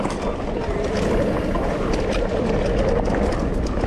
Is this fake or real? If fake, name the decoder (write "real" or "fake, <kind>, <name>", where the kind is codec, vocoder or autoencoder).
real